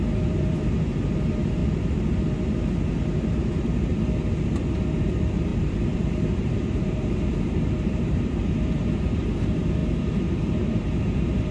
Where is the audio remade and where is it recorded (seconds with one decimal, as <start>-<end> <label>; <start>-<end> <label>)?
0.0-1.6 remade; 1.6-3.3 recorded; 3.3-3.9 remade; 3.9-4.9 recorded; 4.9-11.5 remade